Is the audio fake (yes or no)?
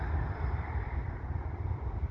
yes